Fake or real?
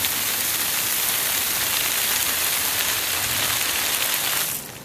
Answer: real